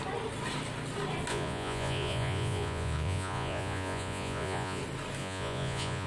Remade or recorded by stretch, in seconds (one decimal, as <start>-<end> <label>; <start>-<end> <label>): 0.0-1.3 recorded; 1.3-4.8 remade; 4.8-5.2 recorded; 5.2-6.1 remade